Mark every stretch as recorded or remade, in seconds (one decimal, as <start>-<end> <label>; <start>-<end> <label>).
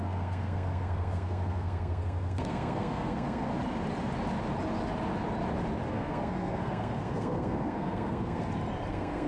0.0-3.5 remade; 3.5-5.9 recorded; 5.9-8.4 remade; 8.4-8.9 recorded; 8.9-9.3 remade